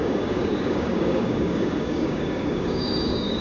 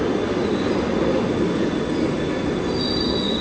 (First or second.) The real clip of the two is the second